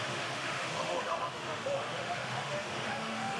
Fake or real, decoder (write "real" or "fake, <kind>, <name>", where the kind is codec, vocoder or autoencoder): fake, autoencoder, DAC-VAE